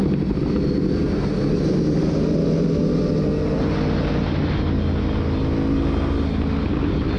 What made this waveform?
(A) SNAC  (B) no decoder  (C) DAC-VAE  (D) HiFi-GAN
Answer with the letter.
B